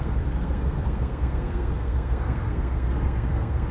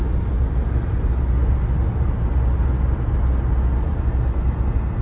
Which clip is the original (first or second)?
second